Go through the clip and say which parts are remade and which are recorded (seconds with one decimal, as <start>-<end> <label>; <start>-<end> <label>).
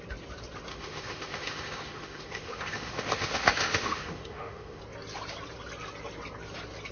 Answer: 0.0-0.7 recorded; 0.7-4.8 remade; 4.8-6.9 recorded